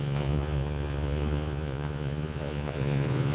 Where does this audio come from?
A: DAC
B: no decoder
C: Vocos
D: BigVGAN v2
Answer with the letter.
C